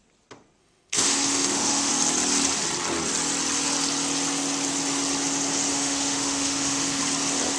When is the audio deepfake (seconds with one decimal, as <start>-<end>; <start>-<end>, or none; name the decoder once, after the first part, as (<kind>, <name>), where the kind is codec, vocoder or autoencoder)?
0.6-1.9 (autoencoder, DAC-VAE); 5.7-7.0